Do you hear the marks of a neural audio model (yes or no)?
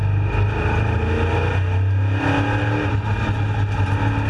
no